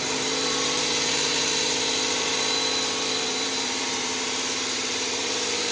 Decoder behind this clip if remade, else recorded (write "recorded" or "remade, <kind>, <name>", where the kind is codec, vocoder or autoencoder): remade, vocoder, BigVGAN v2